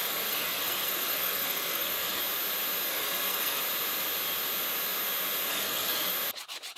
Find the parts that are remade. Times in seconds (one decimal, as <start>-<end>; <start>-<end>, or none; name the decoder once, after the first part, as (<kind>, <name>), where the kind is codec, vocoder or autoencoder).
0.0-2.2 (codec, SNAC); 2.9-3.6; 5.5-6.1